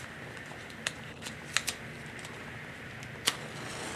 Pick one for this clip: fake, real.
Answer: real